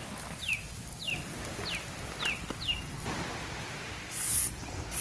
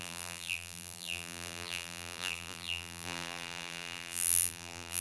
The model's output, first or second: second